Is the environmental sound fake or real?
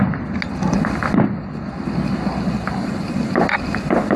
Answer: real